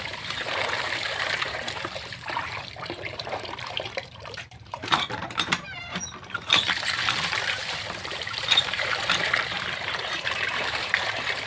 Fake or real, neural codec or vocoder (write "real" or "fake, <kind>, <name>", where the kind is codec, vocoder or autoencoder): fake, vocoder, BigVGAN v2